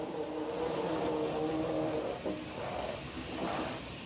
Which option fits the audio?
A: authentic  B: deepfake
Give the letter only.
A